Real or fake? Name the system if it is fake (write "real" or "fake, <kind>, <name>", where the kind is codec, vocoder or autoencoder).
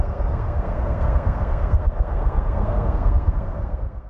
fake, codec, SNAC